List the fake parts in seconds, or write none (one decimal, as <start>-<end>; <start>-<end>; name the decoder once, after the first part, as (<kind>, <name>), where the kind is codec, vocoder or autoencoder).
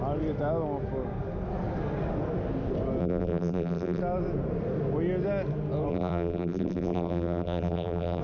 3.0-4.0 (vocoder, BigVGAN v2); 5.9-8.2